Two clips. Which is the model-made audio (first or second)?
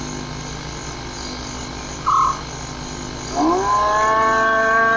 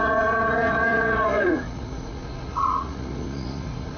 second